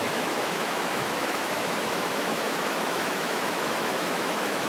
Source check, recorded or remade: remade